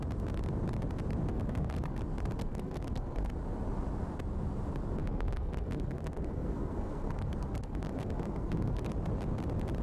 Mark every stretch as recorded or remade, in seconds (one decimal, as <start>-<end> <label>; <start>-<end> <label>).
0.0-1.3 recorded; 1.3-2.0 remade; 2.0-2.4 recorded; 2.4-3.3 remade; 3.3-5.0 recorded; 5.0-8.9 remade; 8.9-9.8 recorded